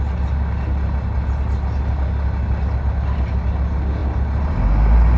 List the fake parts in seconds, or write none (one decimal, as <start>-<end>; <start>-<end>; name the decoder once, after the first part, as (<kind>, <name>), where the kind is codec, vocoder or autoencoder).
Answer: none